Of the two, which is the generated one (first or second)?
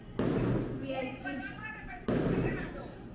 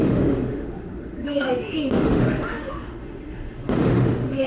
second